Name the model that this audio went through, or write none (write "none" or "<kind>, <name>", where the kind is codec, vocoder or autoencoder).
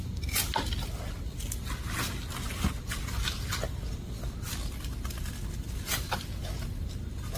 none